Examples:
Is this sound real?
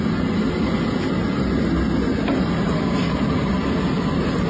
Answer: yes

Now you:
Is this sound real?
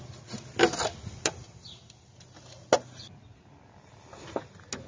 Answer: yes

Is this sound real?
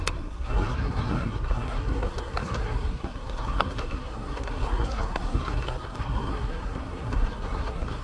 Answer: no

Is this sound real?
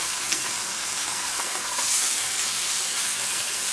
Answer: no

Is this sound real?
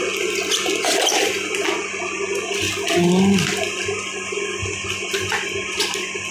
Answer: yes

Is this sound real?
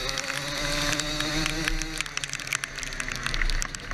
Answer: yes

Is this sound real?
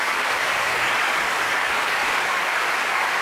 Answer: no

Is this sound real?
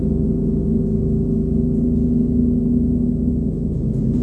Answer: yes